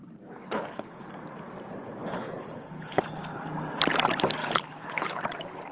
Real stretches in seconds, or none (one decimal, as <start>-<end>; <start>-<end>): 0.0-0.4; 1.1-2.1; 3.0-4.4; 5.2-5.7